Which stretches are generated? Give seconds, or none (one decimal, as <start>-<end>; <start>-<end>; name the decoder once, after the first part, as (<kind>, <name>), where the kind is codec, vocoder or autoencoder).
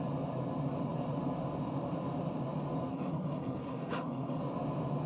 2.9-4.4 (codec, HILCodec)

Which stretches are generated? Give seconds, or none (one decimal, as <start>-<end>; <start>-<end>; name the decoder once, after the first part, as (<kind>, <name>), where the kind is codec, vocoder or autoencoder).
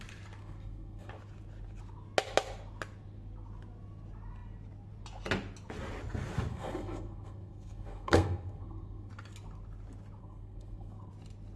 0.4-1.1 (codec, SNAC); 6.5-9.1; 10.2-11.1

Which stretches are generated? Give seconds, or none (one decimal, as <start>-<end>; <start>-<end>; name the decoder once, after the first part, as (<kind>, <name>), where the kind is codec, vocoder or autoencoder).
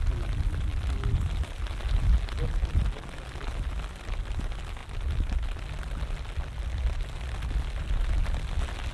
none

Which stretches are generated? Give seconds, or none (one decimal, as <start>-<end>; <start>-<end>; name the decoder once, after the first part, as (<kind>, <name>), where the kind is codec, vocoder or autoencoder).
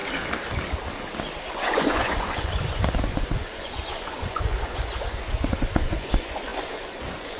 1.5-7.4 (vocoder, Vocos)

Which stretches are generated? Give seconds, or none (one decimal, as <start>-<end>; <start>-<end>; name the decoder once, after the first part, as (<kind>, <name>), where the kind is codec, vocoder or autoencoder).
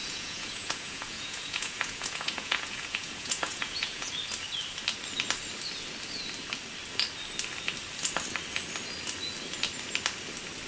0.0-4.1 (vocoder, Vocos)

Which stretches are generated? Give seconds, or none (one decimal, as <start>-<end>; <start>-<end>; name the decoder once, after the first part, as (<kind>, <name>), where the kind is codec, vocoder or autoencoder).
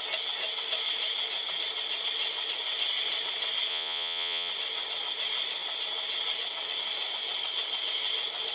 3.7-4.5 (vocoder, Vocos)